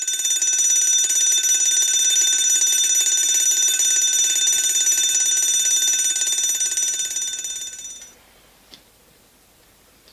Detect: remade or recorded recorded